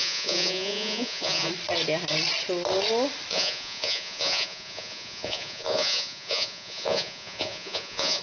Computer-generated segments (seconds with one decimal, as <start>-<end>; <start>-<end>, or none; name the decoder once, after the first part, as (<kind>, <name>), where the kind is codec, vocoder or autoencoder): 0.0-1.5 (vocoder, Vocos); 3.3-8.2